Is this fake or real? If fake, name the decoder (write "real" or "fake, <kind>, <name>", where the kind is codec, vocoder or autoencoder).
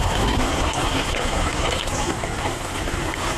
fake, codec, SNAC